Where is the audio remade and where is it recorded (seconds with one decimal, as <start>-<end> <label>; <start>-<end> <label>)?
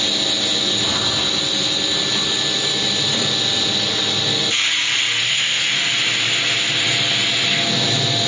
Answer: 0.0-5.2 recorded; 5.2-5.7 remade; 5.7-8.3 recorded